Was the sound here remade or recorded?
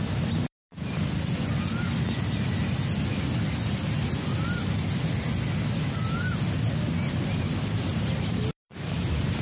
recorded